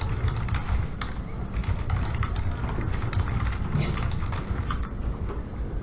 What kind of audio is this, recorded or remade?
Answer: recorded